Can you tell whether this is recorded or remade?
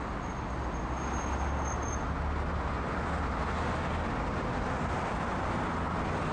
recorded